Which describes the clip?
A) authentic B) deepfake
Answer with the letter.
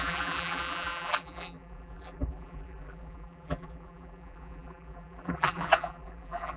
B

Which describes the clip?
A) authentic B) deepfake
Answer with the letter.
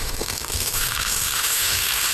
B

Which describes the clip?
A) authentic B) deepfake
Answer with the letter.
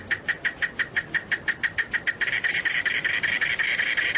A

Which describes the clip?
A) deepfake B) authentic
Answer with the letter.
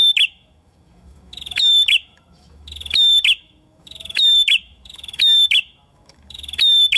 A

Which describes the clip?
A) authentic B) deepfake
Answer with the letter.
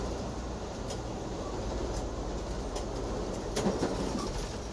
A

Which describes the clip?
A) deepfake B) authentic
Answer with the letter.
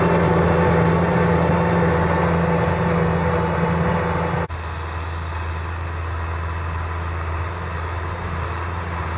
B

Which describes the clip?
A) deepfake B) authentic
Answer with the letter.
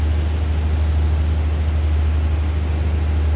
B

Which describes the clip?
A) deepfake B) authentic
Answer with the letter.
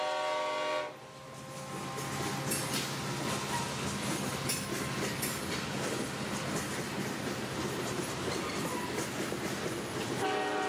B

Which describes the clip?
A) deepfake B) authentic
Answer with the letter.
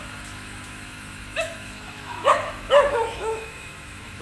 A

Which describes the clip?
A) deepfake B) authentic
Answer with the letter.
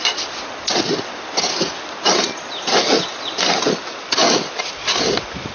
B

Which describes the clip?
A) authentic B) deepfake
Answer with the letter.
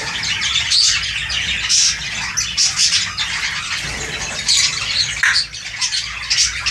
A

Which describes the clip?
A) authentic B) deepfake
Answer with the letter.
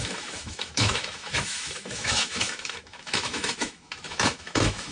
B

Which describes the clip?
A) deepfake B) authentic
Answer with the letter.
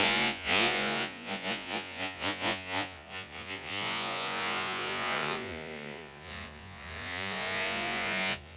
A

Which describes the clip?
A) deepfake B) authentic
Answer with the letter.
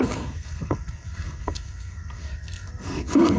A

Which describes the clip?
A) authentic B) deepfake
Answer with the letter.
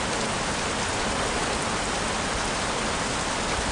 A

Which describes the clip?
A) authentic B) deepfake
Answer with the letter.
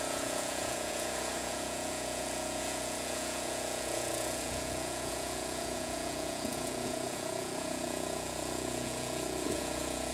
B